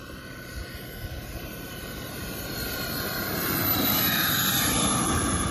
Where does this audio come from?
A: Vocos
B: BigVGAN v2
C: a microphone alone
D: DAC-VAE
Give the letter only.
B